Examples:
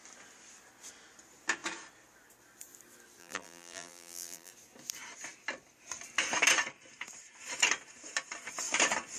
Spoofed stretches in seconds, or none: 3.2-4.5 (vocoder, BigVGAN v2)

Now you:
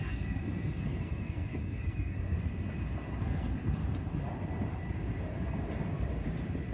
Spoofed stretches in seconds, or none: 0.0-2.5 (codec, SNAC); 3.2-3.8

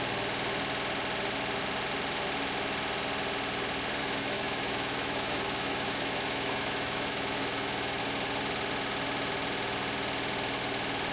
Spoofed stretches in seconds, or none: 4.0-8.0 (autoencoder, DAC-VAE)

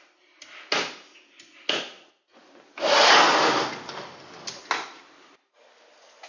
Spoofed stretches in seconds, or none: none

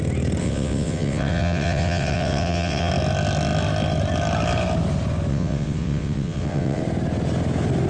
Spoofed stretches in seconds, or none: 0.4-2.9 (vocoder, WaveNeXt); 5.3-6.8

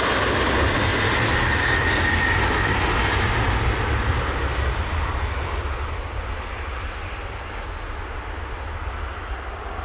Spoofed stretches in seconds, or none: none

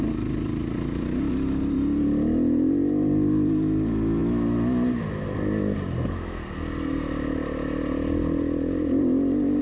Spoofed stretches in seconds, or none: none

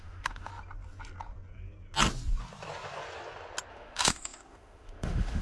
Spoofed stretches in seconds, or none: 0.0-0.5 (autoencoder, DAC-VAE); 3.7-5.4